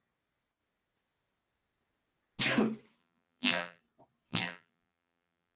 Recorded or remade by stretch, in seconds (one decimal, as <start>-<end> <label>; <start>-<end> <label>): 0.0-3.0 recorded; 3.0-3.8 remade; 3.8-4.3 recorded; 4.3-5.6 remade

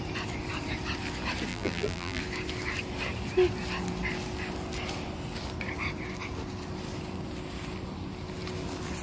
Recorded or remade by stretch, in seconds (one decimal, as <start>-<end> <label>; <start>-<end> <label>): 0.0-1.5 recorded; 1.5-2.2 remade; 2.2-9.0 recorded